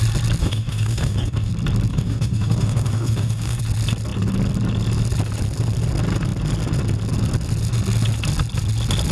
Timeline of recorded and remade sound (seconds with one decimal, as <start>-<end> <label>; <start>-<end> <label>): 0.0-0.4 recorded; 0.4-1.5 remade; 1.5-1.9 recorded; 1.9-3.6 remade; 3.6-9.1 recorded